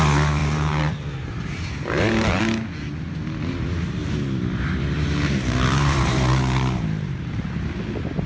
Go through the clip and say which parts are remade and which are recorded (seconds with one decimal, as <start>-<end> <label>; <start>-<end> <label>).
0.0-0.4 recorded; 0.4-2.4 remade; 2.4-4.0 recorded; 4.0-7.3 remade; 7.3-8.3 recorded